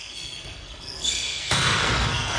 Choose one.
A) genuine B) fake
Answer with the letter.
B